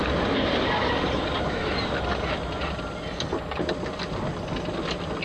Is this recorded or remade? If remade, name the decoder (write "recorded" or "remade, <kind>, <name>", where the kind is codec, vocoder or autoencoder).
recorded